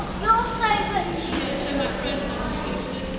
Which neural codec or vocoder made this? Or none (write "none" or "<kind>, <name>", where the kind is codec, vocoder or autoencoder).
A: none